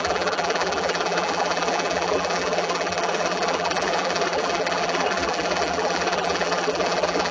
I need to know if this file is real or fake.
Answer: fake